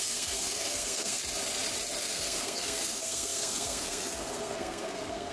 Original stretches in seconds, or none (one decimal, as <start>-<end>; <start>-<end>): 1.2-2.0